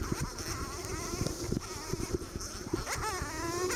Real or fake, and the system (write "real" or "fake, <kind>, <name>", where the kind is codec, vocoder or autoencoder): real